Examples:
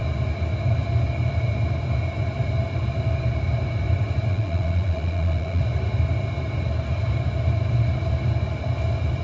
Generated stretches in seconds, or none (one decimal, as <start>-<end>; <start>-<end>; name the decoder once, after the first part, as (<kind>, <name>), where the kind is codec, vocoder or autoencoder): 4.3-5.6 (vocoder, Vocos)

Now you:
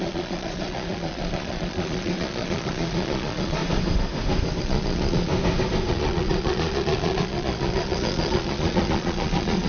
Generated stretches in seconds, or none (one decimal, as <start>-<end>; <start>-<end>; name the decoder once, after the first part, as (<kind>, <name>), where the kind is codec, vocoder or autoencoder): 0.0-3.6 (vocoder, Vocos); 4.6-5.3; 5.9-9.7

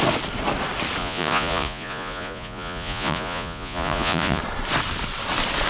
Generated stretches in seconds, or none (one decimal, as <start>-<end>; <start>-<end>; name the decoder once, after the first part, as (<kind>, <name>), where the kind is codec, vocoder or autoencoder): 1.0-4.4 (vocoder, Vocos)

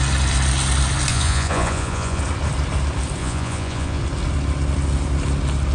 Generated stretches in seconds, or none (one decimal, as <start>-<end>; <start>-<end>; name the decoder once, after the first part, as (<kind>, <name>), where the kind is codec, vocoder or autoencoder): 1.1-2.2 (vocoder, Vocos); 3.2-4.0